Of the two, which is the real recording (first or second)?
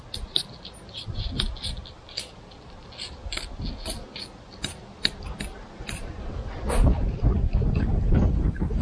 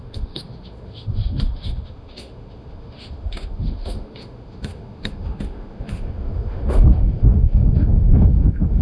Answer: first